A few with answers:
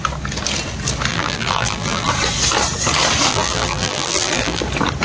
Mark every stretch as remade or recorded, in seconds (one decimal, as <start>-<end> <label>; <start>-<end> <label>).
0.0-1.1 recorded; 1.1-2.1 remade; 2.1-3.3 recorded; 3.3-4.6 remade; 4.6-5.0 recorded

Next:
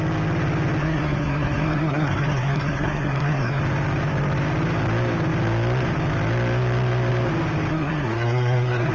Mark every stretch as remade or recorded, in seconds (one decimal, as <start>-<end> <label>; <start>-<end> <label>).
0.0-0.8 recorded; 0.8-3.6 remade; 3.6-7.7 recorded; 7.7-8.9 remade

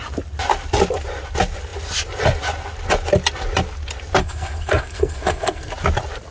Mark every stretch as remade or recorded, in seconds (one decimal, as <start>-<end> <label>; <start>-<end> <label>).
0.0-4.2 recorded; 4.2-5.7 remade; 5.7-6.3 recorded

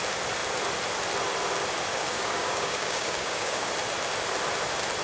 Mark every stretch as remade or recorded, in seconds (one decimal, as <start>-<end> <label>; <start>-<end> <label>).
0.0-1.9 recorded; 1.9-3.7 remade; 3.7-5.0 recorded